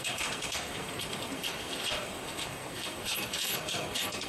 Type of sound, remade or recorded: remade